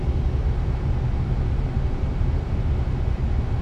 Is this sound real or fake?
real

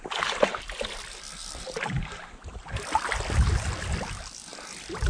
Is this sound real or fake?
real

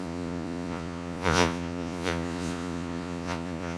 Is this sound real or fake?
fake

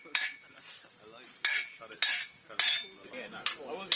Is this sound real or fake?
real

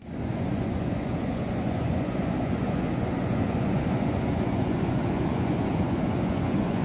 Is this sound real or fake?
fake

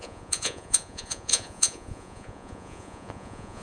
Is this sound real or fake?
fake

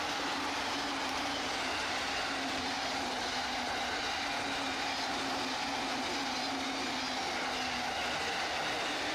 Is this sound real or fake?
real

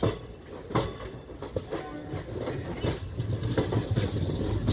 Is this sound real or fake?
real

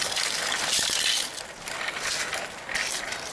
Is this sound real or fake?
real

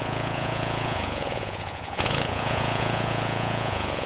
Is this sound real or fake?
fake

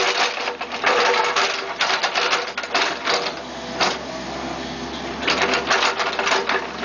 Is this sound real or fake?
real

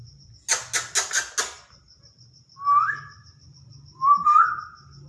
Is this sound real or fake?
real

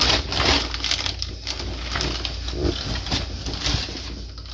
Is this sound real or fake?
real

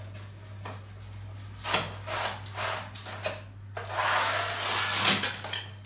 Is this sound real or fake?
real